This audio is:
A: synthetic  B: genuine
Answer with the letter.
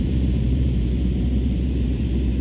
A